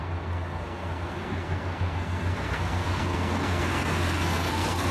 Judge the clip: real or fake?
fake